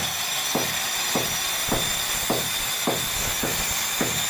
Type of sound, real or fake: real